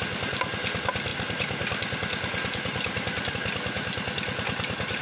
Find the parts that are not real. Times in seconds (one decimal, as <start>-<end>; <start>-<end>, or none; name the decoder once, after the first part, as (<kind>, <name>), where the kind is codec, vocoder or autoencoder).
none